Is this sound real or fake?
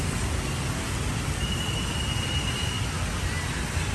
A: real